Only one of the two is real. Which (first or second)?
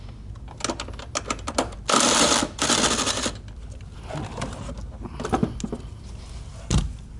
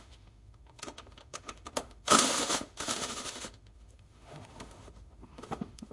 first